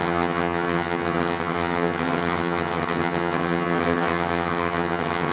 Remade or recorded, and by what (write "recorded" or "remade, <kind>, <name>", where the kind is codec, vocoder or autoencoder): remade, vocoder, HiFi-GAN